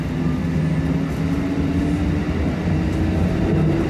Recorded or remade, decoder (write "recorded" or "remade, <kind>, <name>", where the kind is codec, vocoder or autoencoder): recorded